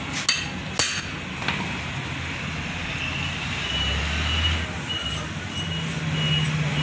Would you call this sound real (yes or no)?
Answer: yes